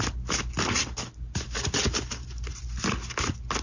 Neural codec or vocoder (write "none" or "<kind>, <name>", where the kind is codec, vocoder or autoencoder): none